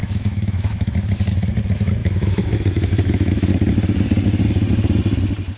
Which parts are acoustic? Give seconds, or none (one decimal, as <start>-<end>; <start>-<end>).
0.9-2.0; 3.5-5.6